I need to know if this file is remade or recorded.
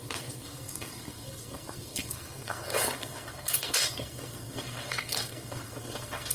remade